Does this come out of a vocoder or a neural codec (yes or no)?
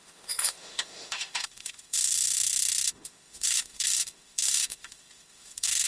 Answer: yes